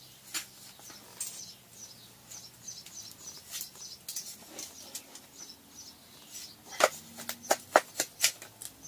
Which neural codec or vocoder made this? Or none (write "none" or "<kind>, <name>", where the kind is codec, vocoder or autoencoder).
none